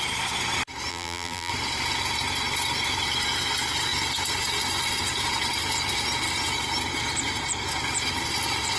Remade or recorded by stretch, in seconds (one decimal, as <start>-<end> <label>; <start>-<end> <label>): 0.0-0.9 recorded; 0.9-1.5 remade; 1.5-8.8 recorded